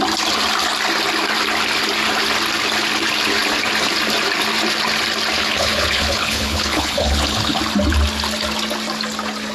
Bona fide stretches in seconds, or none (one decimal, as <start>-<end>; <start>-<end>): 0.0-5.4; 7.6-9.5